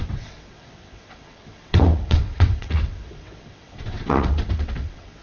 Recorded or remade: remade